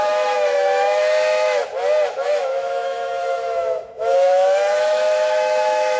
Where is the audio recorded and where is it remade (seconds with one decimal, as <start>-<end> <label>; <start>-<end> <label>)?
0.0-1.6 remade; 1.6-2.1 recorded; 2.1-6.0 remade